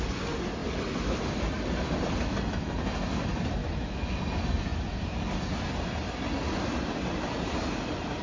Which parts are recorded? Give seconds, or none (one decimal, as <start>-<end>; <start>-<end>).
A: 0.0-3.6; 4.1-8.2